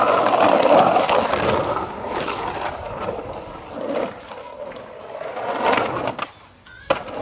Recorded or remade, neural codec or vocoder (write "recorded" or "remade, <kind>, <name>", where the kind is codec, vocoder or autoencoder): recorded